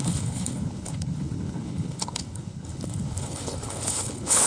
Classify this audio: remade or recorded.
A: remade